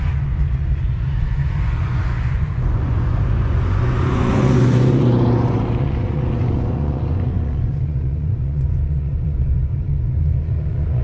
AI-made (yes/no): yes